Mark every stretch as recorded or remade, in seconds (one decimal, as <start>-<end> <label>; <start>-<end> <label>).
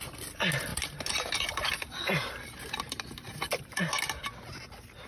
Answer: 0.0-0.7 recorded; 0.7-3.8 remade; 3.8-5.1 recorded